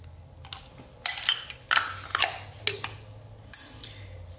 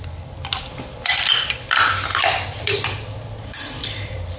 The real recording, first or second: first